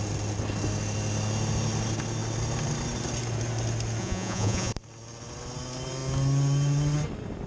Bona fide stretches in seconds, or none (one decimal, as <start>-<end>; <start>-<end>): 0.0-4.0; 4.7-7.5